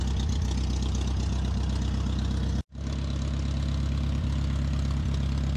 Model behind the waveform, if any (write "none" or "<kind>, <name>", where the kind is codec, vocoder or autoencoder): none